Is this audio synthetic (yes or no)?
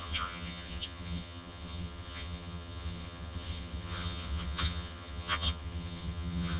yes